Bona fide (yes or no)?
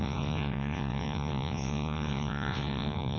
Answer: no